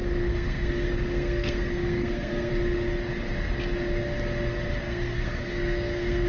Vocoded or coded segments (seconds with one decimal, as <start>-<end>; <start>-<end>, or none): 0.0-2.5; 4.8-6.3